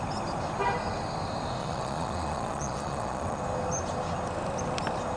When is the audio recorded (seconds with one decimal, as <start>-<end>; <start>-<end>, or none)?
0.0-1.6; 3.4-5.2